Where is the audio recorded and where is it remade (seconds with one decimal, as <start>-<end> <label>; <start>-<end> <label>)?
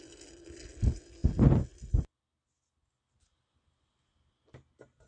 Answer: 0.0-5.1 recorded